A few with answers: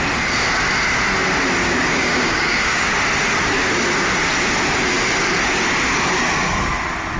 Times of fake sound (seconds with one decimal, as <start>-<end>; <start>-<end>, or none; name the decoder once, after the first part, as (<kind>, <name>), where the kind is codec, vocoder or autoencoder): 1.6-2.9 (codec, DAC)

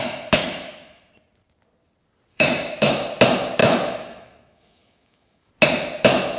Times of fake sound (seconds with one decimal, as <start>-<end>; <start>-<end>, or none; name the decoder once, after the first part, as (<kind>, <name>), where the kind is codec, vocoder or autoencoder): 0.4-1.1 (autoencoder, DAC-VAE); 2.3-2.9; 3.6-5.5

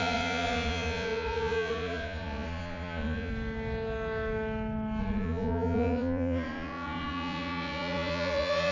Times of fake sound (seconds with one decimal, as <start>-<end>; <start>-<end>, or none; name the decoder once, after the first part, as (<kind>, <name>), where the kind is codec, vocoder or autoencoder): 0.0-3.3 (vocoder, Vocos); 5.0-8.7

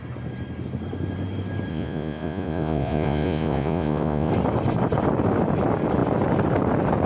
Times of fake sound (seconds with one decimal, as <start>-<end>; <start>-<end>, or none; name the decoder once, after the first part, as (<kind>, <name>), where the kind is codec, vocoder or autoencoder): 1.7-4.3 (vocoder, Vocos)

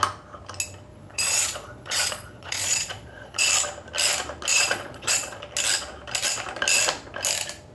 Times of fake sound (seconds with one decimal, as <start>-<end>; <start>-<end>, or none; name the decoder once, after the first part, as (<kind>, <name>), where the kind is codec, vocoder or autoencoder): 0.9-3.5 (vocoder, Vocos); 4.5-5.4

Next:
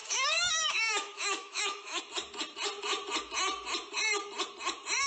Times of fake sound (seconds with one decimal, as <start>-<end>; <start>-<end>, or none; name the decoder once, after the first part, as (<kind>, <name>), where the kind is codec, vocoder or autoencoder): 0.0-2.0 (autoencoder, DAC-VAE)